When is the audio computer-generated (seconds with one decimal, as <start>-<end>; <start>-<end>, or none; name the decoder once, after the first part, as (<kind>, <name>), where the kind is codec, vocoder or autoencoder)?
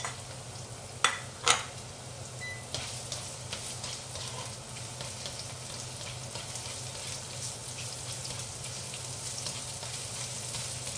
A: none